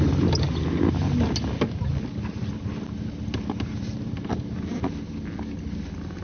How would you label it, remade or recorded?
recorded